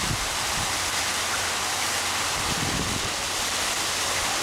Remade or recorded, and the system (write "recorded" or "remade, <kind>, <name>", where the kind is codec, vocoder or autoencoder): recorded